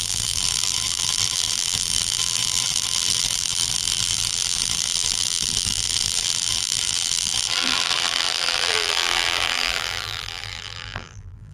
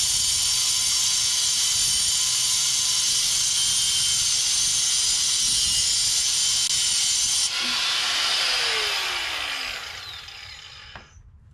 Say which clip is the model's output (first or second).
first